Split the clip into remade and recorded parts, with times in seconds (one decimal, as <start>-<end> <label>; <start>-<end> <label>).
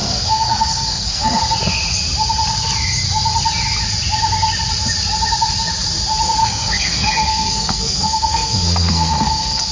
0.0-1.4 remade; 1.4-6.4 recorded; 6.4-9.7 remade